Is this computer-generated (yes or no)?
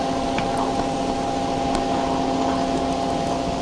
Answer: no